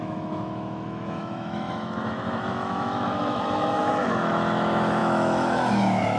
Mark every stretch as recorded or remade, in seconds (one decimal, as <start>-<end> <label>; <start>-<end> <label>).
0.0-6.2 remade